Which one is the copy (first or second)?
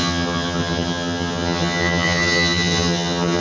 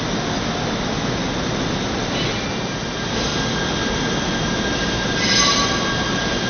first